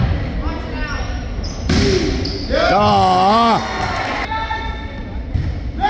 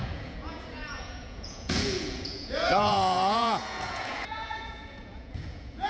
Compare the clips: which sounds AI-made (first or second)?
second